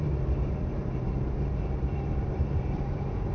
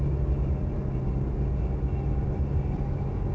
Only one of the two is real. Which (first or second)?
second